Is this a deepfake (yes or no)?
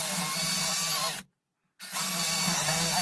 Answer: no